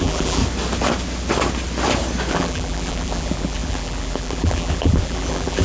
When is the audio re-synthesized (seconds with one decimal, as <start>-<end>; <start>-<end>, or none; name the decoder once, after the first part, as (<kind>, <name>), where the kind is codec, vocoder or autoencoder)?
0.0-0.4 (vocoder, BigVGAN v2); 2.3-5.6

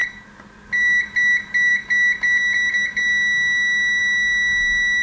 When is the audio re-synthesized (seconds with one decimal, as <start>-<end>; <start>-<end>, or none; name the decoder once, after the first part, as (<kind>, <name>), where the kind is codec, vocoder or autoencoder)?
none